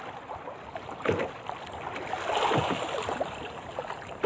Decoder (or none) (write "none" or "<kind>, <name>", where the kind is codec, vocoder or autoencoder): none